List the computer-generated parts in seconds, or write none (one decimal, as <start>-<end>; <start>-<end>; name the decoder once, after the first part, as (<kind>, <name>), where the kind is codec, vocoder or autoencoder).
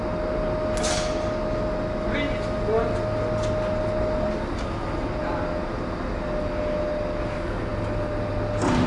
none